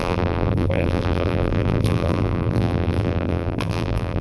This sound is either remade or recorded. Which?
remade